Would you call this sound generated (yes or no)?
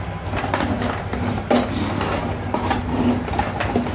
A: no